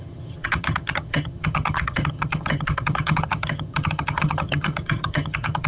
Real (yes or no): no